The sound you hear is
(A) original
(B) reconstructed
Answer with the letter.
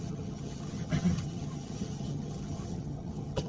B